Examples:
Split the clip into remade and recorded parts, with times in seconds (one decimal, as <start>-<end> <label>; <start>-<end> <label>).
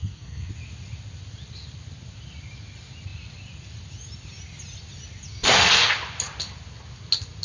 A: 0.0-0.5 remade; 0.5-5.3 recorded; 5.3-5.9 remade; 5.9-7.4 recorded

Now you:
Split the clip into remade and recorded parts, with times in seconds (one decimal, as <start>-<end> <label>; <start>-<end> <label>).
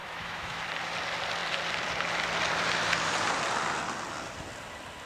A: 0.0-0.6 remade; 0.6-5.1 recorded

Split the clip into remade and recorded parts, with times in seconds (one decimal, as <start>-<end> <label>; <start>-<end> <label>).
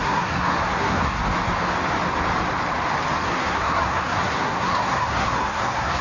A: 0.0-1.2 remade; 1.2-3.3 recorded; 3.3-6.0 remade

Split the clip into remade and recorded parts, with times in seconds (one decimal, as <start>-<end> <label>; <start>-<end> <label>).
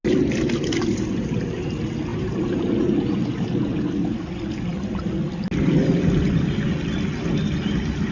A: 0.0-2.1 recorded; 2.1-3.5 remade; 3.5-8.1 recorded